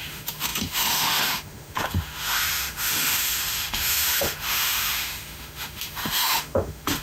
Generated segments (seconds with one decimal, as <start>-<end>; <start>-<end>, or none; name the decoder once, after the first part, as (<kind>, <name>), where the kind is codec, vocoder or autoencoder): 0.0-7.0 (autoencoder, DAC-VAE)